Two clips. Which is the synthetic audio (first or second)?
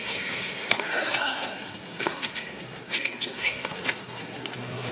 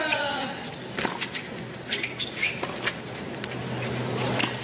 first